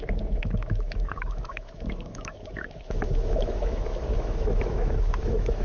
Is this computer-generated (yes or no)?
yes